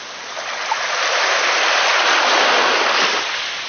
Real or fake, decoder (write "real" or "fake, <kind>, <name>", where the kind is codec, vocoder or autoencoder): real